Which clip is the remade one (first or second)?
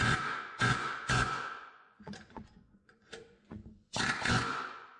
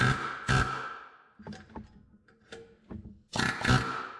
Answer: first